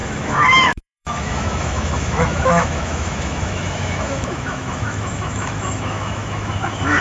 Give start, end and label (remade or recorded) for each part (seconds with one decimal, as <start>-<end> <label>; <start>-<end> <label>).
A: 0.0-7.0 remade